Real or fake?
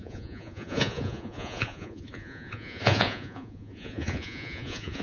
fake